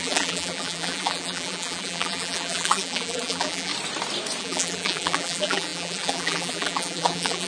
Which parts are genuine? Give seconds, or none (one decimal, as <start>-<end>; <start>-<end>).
3.7-4.4